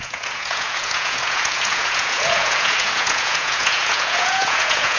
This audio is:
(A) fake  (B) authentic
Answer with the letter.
A